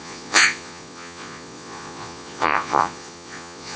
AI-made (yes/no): yes